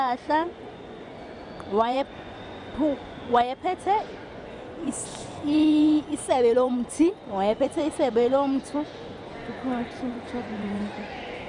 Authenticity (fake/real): fake